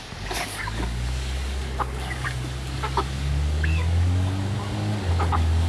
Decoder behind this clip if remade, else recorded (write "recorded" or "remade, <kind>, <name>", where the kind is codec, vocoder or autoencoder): remade, codec, DAC